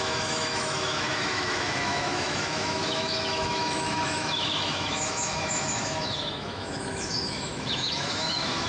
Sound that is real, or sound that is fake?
fake